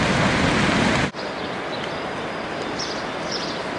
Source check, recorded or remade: recorded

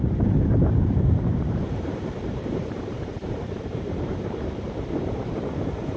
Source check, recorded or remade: remade